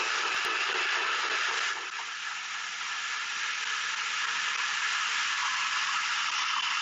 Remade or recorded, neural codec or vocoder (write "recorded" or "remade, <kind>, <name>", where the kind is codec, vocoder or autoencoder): recorded